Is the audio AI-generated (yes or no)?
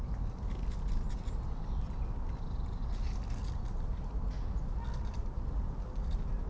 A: no